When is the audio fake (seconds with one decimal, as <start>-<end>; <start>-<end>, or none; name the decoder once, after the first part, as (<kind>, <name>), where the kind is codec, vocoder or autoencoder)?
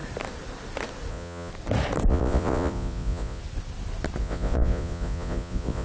1.1-1.5 (vocoder, Vocos); 2.1-3.4; 4.2-5.8